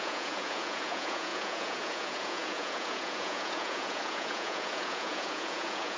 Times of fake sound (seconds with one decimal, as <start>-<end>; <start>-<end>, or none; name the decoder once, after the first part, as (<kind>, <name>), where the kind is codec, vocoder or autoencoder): 0.0-6.0 (vocoder, Vocos)